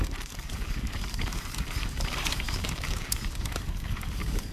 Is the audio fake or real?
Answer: fake